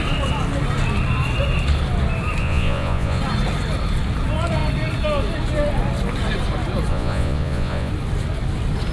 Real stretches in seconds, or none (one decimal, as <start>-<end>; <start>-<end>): 0.0-2.4; 3.2-6.9; 7.9-8.9